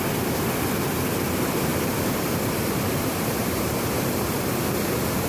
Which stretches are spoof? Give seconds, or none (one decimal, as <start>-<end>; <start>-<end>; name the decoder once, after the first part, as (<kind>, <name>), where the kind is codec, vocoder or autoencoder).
1.7-4.5 (vocoder, BigVGAN v2)